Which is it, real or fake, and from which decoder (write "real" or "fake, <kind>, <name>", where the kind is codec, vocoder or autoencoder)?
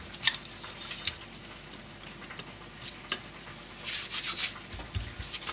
real